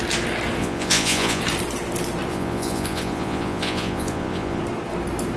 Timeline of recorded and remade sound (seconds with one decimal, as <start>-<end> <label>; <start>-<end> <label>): 0.0-0.6 recorded; 0.6-1.4 remade; 1.4-2.3 recorded; 2.3-4.6 remade; 4.6-5.4 recorded